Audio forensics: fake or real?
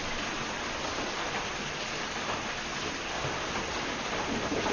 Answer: real